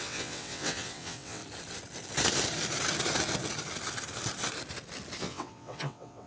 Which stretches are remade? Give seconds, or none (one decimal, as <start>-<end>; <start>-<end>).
0.0-1.4; 5.2-6.3